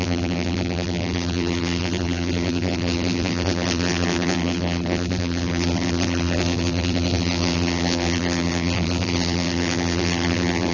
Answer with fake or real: fake